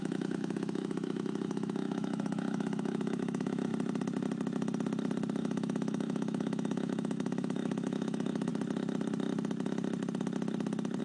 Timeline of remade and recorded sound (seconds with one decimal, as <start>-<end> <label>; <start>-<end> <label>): 0.0-3.7 remade; 3.7-5.4 recorded; 5.4-8.5 remade; 8.5-11.0 recorded